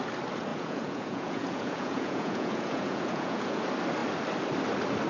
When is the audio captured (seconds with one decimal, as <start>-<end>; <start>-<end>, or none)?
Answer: 0.0-0.5; 3.6-5.1